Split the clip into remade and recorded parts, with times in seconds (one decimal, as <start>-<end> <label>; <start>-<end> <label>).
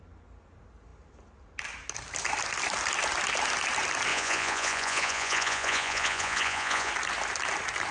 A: 0.0-4.1 recorded; 4.1-6.9 remade; 6.9-7.9 recorded